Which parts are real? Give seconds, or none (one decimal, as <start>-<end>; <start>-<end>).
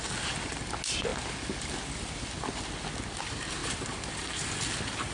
0.0-5.1